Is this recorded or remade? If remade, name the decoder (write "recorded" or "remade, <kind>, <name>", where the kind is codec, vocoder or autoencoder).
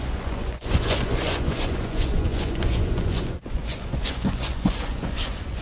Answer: remade, vocoder, Vocos